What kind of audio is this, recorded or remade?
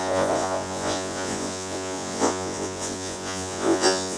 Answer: remade